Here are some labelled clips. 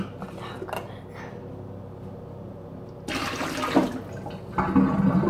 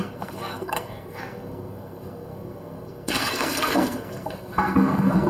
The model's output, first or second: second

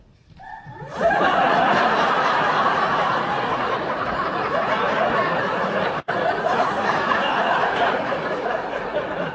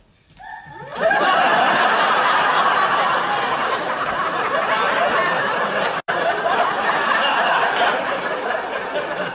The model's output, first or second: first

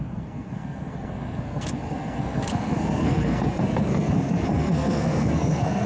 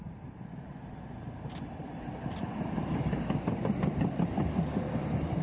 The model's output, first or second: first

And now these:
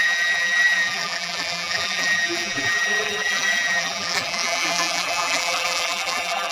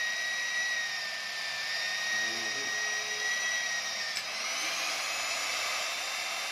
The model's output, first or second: first